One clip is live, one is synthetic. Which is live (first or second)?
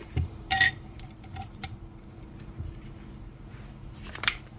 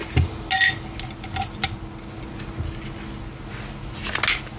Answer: second